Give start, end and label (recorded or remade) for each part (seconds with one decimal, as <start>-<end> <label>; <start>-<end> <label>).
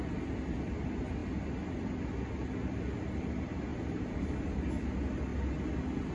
0.0-3.7 recorded; 3.7-4.7 remade; 4.7-6.1 recorded